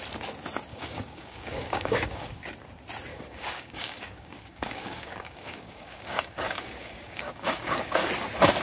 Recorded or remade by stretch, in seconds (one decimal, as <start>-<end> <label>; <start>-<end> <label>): 0.0-0.7 recorded; 0.7-2.4 remade; 2.4-3.1 recorded; 3.1-8.1 remade; 8.1-8.6 recorded